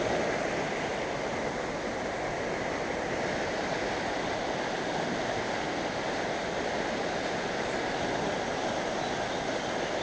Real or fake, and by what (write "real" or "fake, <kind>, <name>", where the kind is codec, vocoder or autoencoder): real